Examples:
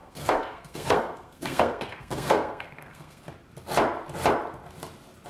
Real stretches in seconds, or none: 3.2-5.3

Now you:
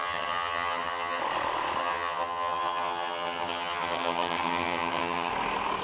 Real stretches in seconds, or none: 1.2-1.8; 5.3-5.8